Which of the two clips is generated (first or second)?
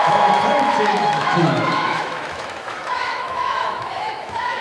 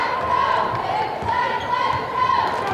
first